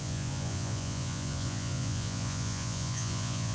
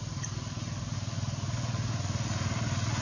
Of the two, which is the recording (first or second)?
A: second